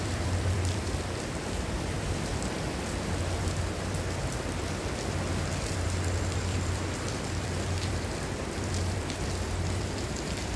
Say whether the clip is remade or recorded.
remade